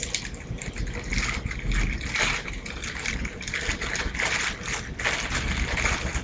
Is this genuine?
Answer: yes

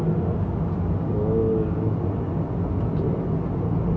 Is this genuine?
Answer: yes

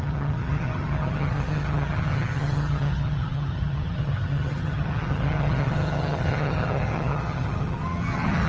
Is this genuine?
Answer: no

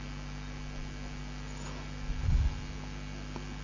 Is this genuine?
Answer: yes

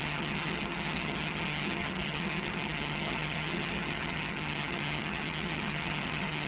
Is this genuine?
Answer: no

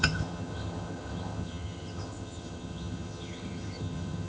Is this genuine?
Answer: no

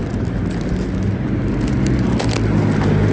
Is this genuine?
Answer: yes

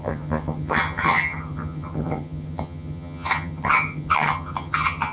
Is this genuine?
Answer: no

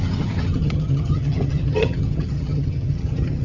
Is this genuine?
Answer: no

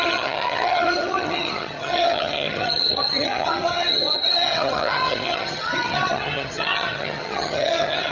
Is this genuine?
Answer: no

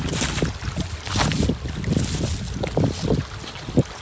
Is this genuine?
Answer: yes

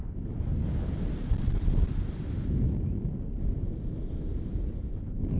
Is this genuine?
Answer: yes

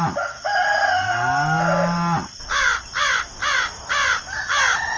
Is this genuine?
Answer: yes